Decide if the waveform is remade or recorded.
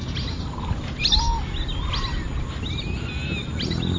recorded